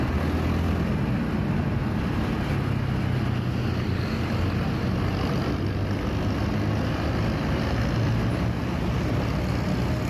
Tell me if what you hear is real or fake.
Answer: real